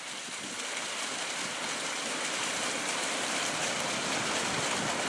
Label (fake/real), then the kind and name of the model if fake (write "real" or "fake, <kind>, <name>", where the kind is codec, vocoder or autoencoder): real